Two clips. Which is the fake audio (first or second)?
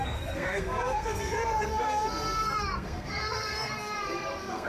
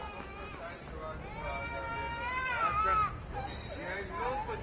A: first